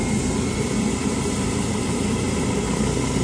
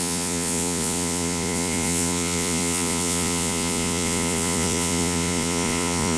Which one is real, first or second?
first